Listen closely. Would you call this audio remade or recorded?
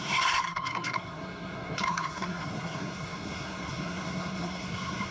remade